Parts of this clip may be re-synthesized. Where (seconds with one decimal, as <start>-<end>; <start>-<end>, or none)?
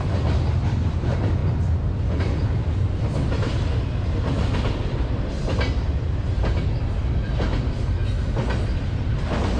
0.0-1.4; 2.2-8.0; 8.9-9.6